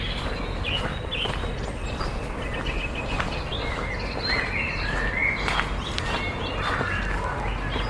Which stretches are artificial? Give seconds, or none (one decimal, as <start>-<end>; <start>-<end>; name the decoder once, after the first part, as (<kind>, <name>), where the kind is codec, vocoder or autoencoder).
none